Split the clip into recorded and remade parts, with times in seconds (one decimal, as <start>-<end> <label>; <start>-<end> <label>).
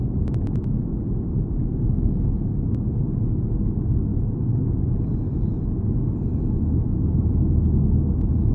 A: 0.0-8.5 recorded